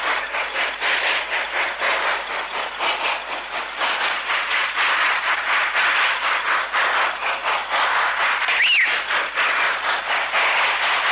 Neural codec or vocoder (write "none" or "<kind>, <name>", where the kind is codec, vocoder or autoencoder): none